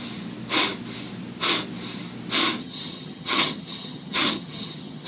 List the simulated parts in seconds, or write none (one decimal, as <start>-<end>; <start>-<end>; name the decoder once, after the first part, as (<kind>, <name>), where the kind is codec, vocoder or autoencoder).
2.6-5.1 (vocoder, HiFi-GAN)